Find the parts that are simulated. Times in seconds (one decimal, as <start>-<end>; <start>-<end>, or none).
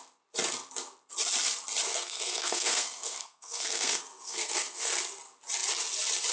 1.9-4.9